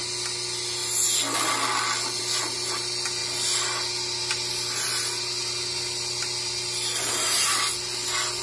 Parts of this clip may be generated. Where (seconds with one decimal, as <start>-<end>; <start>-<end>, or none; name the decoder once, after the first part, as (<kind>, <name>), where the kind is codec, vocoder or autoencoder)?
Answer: none